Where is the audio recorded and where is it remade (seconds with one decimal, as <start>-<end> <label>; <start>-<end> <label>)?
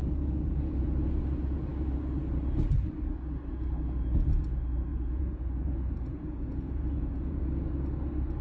0.0-1.2 remade; 1.2-4.9 recorded; 4.9-7.4 remade; 7.4-8.4 recorded